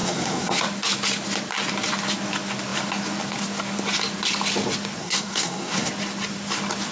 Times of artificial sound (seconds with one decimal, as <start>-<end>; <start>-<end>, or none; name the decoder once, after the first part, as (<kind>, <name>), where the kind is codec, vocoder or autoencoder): 0.0-0.6 (codec, SNAC); 5.0-5.9